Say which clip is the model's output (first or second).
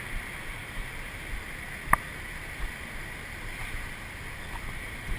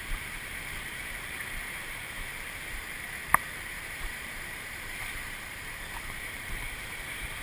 second